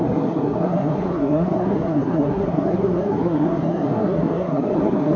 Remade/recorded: remade